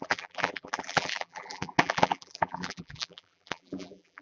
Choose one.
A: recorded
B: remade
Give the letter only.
B